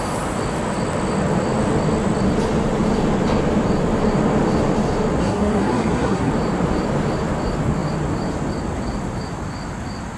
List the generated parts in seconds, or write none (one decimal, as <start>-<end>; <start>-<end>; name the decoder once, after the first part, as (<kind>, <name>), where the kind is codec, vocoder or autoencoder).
5.2-6.3 (codec, SNAC)